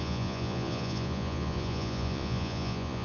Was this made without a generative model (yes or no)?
no